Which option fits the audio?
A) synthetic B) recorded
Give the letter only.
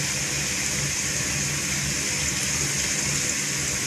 B